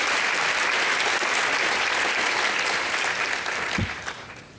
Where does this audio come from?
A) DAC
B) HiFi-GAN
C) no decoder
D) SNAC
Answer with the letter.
C